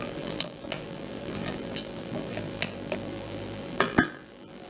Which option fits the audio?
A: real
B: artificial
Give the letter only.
B